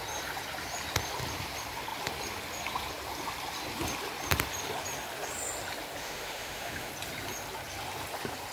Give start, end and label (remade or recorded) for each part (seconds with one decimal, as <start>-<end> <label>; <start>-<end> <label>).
0.0-6.0 recorded; 6.0-6.9 remade; 6.9-8.5 recorded